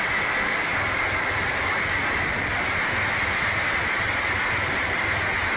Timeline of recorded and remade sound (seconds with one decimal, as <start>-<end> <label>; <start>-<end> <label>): 0.0-5.6 recorded